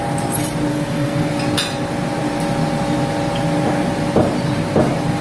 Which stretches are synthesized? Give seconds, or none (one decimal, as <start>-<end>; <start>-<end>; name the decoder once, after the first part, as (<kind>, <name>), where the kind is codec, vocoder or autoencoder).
0.7-1.3 (codec, SNAC)